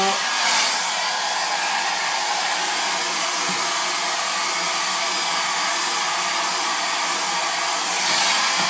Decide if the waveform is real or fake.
real